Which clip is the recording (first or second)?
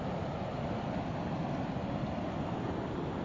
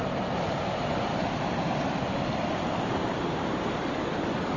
first